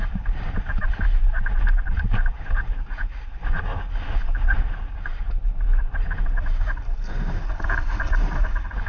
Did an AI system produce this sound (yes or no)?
no